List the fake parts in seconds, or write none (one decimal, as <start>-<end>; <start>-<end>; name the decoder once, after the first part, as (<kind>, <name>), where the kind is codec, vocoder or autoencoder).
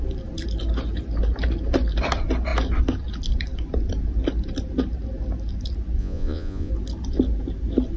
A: 6.0-6.7 (vocoder, Vocos)